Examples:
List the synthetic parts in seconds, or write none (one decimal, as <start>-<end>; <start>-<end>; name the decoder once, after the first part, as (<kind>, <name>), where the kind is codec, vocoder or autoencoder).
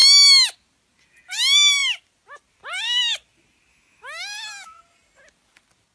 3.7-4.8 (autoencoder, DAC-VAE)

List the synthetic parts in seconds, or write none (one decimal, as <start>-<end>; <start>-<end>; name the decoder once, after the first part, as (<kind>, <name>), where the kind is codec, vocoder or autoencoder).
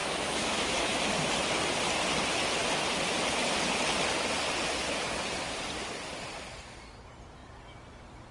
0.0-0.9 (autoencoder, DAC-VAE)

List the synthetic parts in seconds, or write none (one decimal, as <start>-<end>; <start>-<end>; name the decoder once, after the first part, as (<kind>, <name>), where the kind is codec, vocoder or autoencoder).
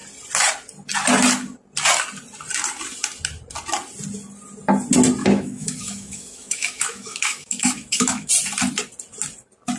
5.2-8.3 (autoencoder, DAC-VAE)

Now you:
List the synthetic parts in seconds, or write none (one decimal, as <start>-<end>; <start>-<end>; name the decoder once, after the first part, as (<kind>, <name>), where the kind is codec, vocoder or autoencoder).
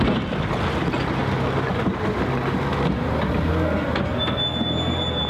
none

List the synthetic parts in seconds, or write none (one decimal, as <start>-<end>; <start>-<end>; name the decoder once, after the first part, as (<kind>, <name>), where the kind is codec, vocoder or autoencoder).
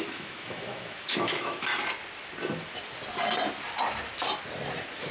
0.0-1.7 (autoencoder, DAC-VAE)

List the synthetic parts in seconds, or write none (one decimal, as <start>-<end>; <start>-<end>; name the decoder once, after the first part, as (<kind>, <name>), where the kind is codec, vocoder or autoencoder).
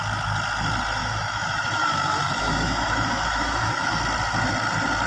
1.0-4.0 (autoencoder, DAC-VAE)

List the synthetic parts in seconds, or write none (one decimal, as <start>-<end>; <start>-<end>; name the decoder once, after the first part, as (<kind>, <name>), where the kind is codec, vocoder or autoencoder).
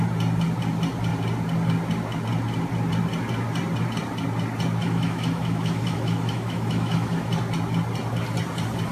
4.8-7.3 (autoencoder, DAC-VAE)